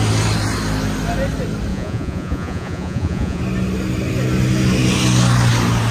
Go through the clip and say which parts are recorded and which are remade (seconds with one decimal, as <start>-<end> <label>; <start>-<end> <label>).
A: 0.0-1.7 recorded; 1.7-3.4 remade; 3.4-5.9 recorded